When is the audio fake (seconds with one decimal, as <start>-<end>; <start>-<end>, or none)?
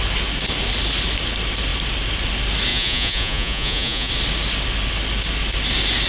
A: 2.7-4.1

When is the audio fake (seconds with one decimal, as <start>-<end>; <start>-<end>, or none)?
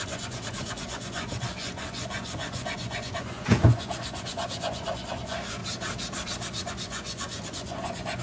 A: 0.0-5.6; 6.7-8.2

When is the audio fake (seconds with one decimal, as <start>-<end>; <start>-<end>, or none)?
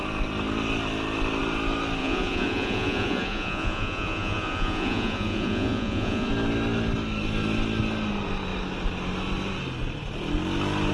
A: 2.0-6.3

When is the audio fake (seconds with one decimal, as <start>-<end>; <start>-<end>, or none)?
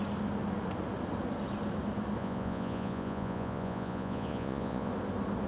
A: 2.2-4.9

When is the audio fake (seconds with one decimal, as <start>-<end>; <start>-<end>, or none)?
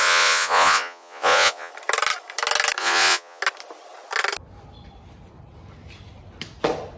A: 0.0-1.7; 2.8-3.4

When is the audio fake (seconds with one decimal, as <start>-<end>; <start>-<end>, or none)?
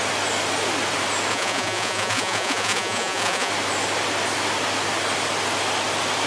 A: 1.3-3.5